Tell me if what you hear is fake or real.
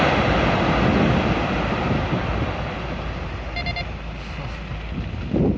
real